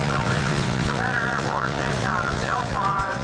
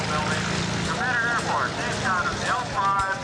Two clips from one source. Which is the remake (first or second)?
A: first